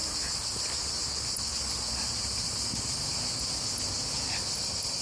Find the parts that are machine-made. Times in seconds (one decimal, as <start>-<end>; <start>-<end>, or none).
none